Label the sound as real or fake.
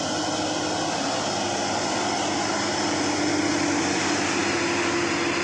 real